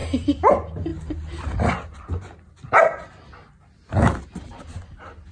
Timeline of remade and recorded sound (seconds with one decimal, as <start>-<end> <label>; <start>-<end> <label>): 0.0-0.5 remade; 0.5-0.9 recorded; 0.9-2.5 remade; 2.5-5.3 recorded